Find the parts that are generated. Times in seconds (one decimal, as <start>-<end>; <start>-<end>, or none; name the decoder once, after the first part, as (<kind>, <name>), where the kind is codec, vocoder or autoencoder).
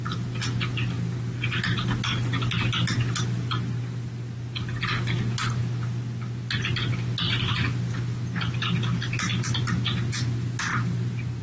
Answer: none